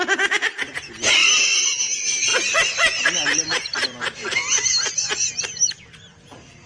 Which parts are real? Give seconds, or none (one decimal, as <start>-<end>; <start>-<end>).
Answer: 0.0-1.2; 1.8-6.7